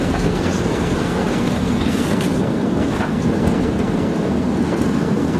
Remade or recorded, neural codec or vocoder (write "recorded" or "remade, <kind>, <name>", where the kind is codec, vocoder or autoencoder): remade, codec, SNAC